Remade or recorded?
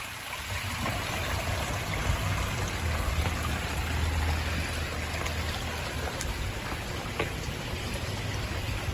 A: recorded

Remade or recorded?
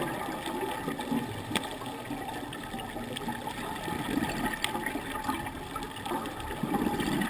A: recorded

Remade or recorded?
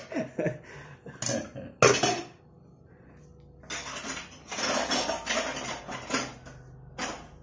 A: recorded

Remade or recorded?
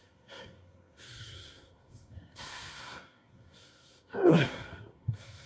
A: remade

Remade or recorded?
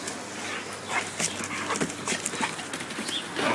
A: recorded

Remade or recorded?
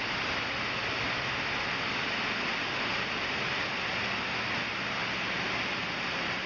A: recorded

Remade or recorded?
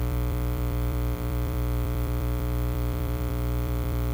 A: remade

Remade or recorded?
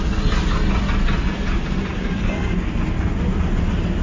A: recorded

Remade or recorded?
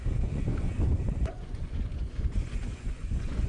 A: remade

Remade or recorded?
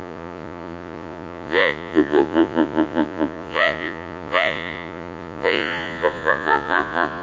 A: remade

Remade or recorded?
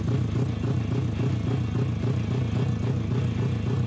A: recorded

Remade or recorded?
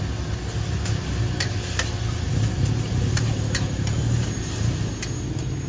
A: recorded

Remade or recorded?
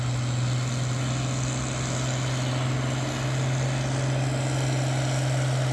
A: recorded